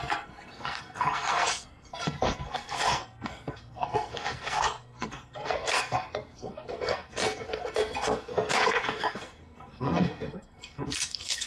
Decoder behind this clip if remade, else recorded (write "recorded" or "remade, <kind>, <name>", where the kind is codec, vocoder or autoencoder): remade, codec, SNAC